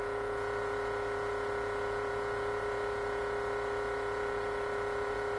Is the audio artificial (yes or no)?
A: yes